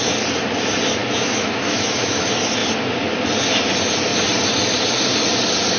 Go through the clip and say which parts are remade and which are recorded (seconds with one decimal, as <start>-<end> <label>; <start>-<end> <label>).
0.0-1.0 recorded; 1.0-2.2 remade; 2.2-5.8 recorded